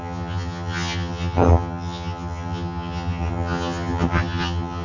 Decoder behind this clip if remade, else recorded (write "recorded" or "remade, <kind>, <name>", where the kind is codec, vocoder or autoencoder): remade, vocoder, HiFi-GAN